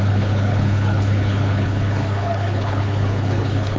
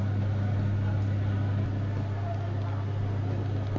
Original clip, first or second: second